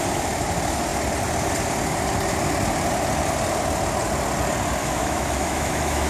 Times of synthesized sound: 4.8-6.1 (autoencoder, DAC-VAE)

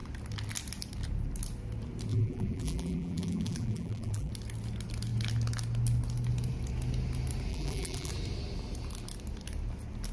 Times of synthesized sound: 2.1-4.3 (vocoder, BigVGAN v2); 7.5-8.1

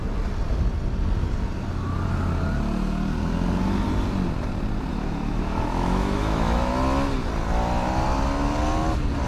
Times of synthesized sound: 4.9-6.7 (autoencoder, DAC-VAE)

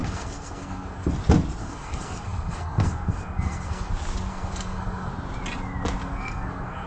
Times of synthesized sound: 0.0-1.1 (codec, SNAC); 1.6-3.9; 4.3-5.1; 6.0-6.9

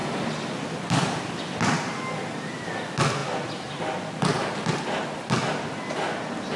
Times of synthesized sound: none